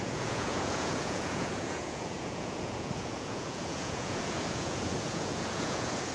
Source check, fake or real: fake